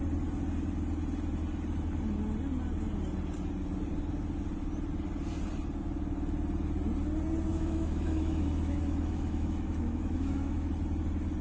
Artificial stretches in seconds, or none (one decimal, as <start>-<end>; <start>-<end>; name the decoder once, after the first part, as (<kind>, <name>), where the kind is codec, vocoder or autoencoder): 7.5-10.7 (autoencoder, DAC-VAE)